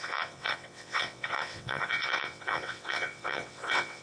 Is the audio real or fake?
fake